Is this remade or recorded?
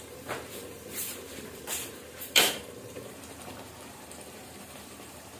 remade